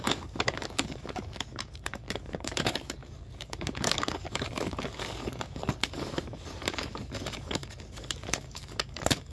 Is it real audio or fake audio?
fake